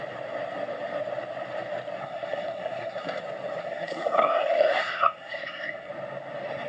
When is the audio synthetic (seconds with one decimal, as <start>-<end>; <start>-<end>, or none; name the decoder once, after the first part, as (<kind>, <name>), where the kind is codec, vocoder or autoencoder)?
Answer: 2.0-3.2 (codec, SNAC); 3.6-5.9